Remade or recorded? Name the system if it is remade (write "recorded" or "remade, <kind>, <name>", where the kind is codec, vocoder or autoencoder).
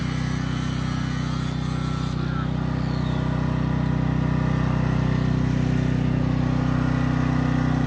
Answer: recorded